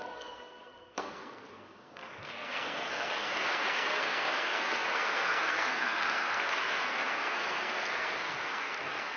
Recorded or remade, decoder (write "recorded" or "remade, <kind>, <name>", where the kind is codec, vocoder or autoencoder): remade, codec, SNAC